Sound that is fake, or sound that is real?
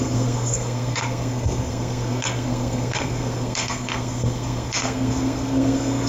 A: fake